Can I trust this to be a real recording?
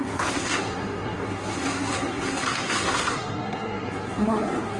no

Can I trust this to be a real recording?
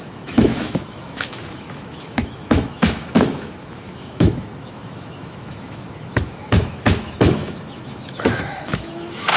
no